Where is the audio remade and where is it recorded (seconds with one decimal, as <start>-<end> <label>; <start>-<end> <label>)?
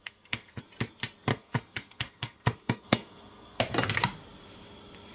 0.0-0.6 remade; 0.6-1.3 recorded; 1.3-3.6 remade; 3.6-5.1 recorded